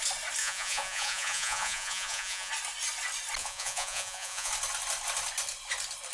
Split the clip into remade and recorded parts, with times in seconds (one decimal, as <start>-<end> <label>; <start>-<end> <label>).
0.0-0.4 recorded; 0.4-2.5 remade; 2.5-3.4 recorded; 3.4-4.5 remade; 4.5-6.1 recorded